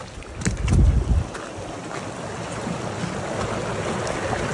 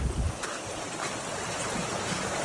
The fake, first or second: second